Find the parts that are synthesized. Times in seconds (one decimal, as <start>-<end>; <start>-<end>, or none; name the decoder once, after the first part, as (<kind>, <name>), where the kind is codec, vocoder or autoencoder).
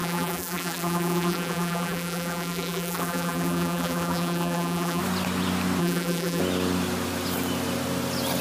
0.0-5.0 (vocoder, BigVGAN v2); 5.8-6.4